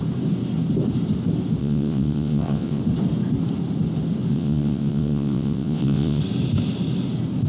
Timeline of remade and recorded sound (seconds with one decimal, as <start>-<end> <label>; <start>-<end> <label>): 0.0-1.6 recorded; 1.6-2.8 remade; 2.8-4.3 recorded; 4.3-6.2 remade; 6.2-7.5 recorded